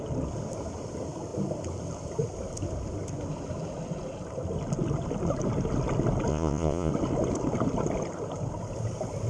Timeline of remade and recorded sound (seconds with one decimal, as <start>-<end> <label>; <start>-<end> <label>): 0.0-6.3 recorded; 6.3-6.9 remade; 6.9-9.3 recorded